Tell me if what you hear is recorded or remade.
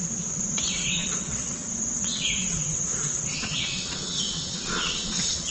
remade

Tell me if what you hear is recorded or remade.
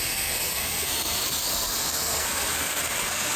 remade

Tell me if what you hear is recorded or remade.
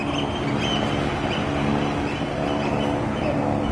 recorded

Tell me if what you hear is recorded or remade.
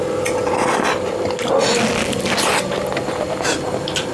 recorded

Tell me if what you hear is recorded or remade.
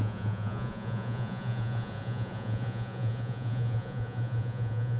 remade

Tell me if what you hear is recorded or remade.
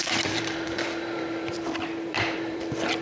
remade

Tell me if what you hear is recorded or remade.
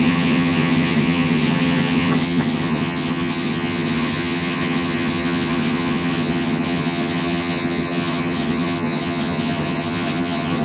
remade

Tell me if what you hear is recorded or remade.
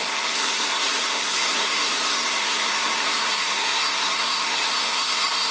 remade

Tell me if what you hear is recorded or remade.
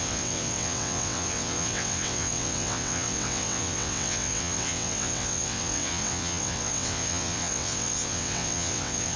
remade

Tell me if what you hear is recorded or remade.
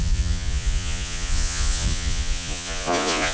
remade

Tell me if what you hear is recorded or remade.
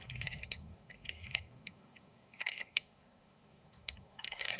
remade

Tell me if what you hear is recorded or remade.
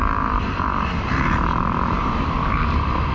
remade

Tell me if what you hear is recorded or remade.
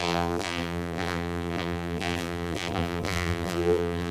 remade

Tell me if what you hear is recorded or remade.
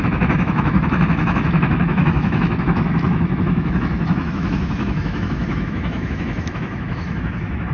remade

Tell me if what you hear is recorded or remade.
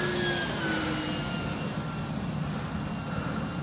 recorded